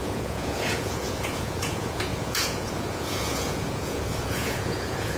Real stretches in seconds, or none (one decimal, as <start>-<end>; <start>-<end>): none